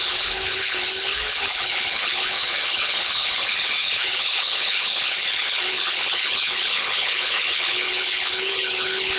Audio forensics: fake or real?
fake